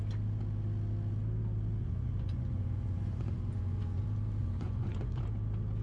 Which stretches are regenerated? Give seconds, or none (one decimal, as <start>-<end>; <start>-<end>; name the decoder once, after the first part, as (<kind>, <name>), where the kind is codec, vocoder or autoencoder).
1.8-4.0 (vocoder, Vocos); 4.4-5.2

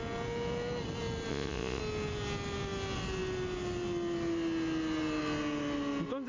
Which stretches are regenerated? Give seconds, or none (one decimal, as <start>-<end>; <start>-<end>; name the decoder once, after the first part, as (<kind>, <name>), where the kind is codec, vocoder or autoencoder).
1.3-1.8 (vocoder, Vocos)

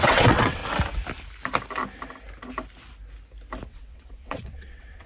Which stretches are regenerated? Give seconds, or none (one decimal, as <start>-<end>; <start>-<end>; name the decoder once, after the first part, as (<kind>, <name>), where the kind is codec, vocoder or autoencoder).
0.0-0.6 (vocoder, WaveNeXt); 3.7-5.1

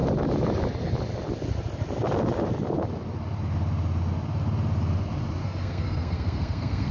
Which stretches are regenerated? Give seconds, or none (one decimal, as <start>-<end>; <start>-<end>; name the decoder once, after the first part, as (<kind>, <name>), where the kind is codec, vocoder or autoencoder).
5.4-6.9 (codec, SNAC)